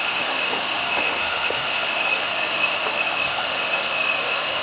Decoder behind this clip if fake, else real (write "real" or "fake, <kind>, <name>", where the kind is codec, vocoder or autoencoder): fake, autoencoder, DAC-VAE